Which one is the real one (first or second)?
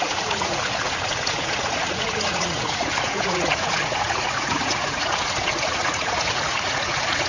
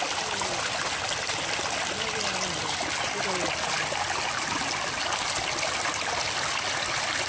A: second